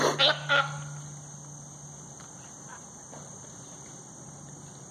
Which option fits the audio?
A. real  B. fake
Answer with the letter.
A